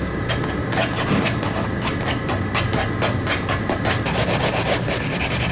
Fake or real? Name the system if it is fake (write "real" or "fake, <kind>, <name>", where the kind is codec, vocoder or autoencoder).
real